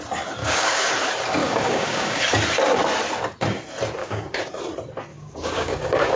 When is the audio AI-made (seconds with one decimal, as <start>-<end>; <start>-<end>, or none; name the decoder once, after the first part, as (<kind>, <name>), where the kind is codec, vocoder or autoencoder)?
0.4-0.9 (codec, DAC); 1.4-2.2; 4.0-4.5; 5.1-6.2